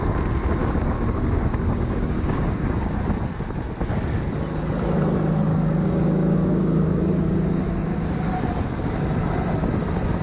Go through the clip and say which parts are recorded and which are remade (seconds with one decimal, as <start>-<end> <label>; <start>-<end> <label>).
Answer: 0.0-0.6 recorded; 0.6-2.9 remade; 2.9-5.5 recorded; 5.5-8.2 remade; 8.2-10.2 recorded

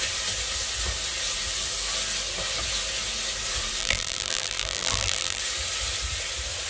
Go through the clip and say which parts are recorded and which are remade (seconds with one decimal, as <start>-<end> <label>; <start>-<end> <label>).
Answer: 0.0-3.8 recorded; 3.8-5.4 remade; 5.4-6.7 recorded

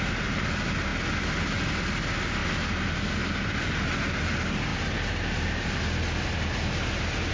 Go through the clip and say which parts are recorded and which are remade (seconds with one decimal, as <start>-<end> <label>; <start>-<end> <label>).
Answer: 0.0-7.3 recorded

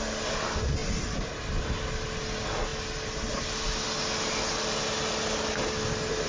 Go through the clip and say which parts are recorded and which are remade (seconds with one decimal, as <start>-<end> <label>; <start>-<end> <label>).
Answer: 0.0-6.3 recorded